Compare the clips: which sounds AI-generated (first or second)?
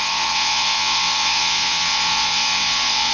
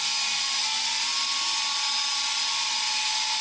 first